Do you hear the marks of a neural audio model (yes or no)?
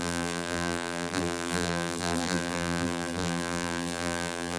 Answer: yes